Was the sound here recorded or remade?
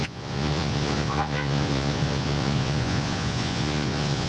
remade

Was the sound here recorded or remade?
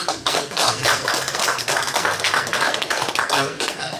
remade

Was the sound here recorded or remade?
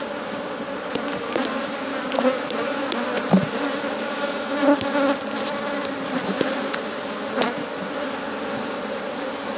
recorded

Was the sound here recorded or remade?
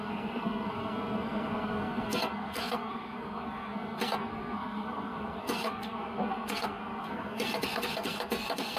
remade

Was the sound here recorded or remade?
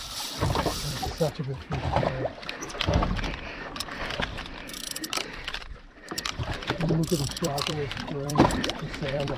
remade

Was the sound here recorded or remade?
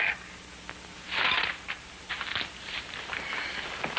recorded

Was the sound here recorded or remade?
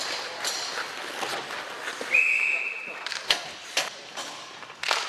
recorded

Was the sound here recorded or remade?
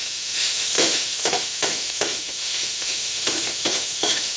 remade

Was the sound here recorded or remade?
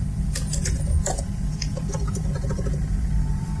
remade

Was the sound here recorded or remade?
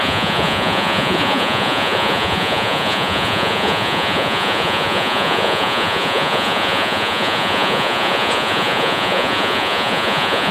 remade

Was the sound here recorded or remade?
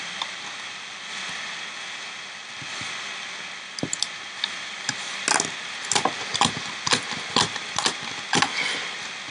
recorded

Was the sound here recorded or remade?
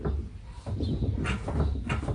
recorded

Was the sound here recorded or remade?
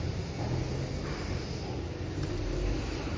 recorded